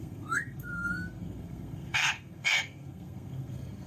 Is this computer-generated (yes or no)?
yes